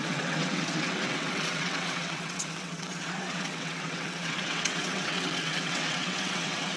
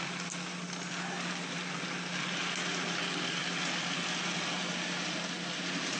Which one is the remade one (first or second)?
first